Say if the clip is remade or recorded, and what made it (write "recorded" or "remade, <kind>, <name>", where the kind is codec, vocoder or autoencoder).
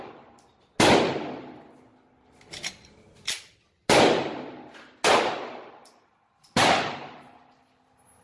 recorded